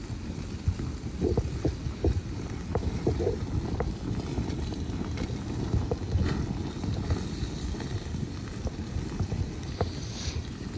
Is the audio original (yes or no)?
yes